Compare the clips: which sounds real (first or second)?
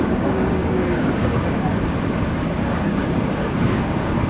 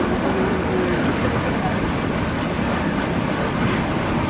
second